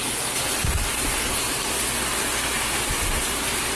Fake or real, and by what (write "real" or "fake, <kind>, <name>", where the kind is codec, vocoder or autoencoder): real